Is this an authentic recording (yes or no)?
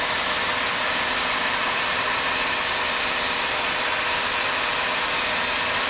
yes